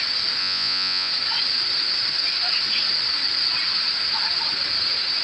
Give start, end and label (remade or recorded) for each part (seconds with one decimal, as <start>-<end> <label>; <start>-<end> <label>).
0.0-0.4 recorded; 0.4-1.1 remade; 1.1-5.2 recorded

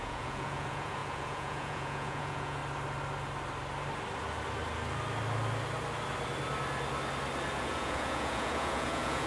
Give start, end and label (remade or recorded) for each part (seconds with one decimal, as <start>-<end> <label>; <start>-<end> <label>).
0.0-2.6 remade; 2.6-7.6 recorded; 7.6-9.3 remade

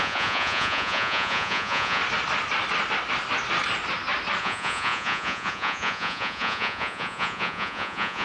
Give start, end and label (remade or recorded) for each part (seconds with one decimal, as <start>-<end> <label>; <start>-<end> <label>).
0.0-2.0 remade; 2.0-4.4 recorded; 4.4-8.2 remade

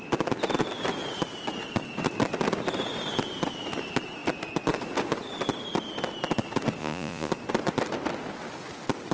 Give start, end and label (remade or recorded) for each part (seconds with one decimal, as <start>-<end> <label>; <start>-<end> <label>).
0.0-6.8 recorded; 6.8-7.3 remade; 7.3-9.1 recorded

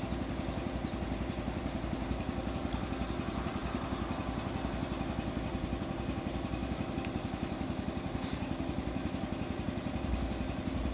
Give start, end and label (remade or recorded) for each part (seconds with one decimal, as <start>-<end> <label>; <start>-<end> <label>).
0.0-10.9 recorded